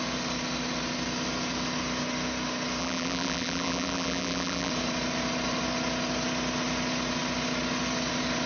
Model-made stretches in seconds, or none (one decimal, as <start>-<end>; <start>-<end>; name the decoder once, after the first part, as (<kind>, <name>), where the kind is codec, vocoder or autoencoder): 2.8-4.7 (vocoder, BigVGAN v2)